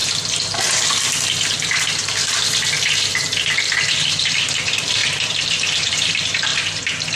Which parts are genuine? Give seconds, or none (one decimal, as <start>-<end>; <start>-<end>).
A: 0.0-3.8